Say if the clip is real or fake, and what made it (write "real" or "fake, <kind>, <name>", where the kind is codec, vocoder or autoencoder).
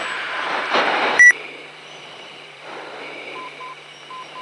fake, vocoder, BigVGAN v2